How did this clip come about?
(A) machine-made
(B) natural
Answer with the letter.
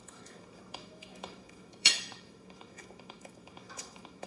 A